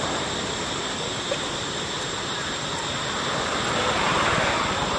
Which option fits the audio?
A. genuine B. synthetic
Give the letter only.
A